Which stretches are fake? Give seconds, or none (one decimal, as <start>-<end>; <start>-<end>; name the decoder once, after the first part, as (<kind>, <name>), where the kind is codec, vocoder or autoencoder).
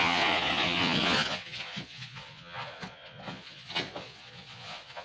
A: 0.0-5.0 (vocoder, Vocos)